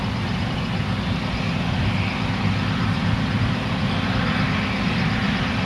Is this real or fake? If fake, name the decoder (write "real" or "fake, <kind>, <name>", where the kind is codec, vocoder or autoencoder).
real